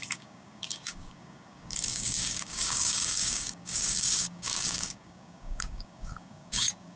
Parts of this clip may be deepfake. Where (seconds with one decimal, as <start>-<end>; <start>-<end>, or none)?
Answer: 0.0-7.0